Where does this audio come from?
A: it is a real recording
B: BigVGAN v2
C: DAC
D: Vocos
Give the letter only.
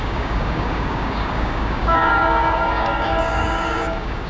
C